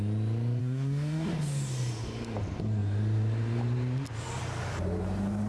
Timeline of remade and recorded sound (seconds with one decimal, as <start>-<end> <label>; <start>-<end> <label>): 0.0-0.6 recorded; 0.6-1.3 remade; 1.3-5.5 recorded